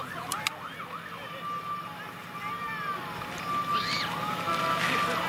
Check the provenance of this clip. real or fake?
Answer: real